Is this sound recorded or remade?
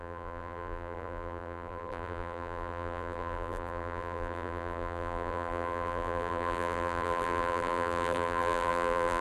remade